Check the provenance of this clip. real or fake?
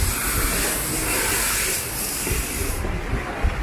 real